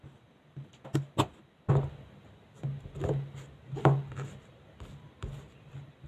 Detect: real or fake real